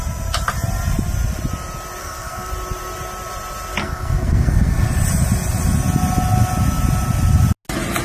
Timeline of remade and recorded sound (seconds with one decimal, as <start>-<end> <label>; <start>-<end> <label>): 0.0-2.0 recorded; 2.0-2.5 remade; 2.5-3.8 recorded; 3.8-4.8 remade; 4.8-8.0 recorded